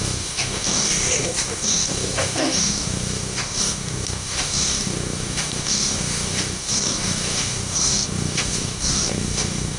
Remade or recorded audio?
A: remade